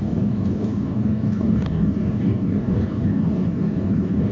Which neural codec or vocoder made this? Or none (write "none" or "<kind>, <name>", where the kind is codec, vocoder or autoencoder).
codec, DAC